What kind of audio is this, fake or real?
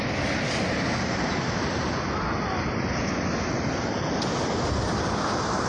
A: real